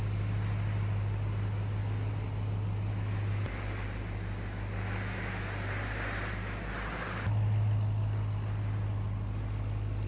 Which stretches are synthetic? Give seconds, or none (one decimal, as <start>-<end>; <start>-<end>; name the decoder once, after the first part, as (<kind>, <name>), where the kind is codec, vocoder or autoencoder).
1.8-2.9 (vocoder, BigVGAN v2)